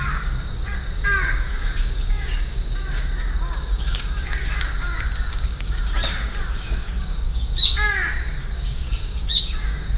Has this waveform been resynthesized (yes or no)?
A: yes